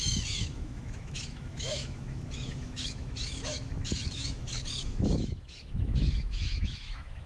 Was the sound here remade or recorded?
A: remade